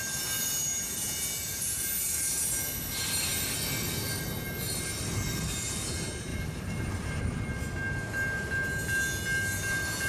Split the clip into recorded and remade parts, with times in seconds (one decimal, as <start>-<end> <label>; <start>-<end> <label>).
0.0-6.3 recorded; 6.3-7.2 remade; 7.2-10.1 recorded